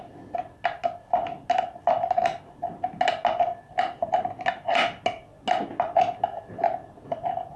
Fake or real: real